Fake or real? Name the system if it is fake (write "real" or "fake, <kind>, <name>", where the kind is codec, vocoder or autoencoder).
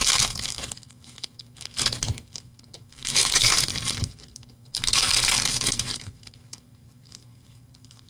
fake, codec, SNAC